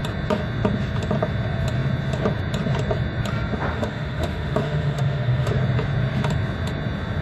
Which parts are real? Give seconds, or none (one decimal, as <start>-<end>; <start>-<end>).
0.0-3.7; 5.5-7.2